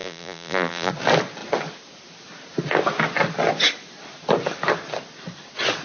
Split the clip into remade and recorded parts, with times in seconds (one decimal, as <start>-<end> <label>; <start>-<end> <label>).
0.0-0.9 remade; 0.9-5.8 recorded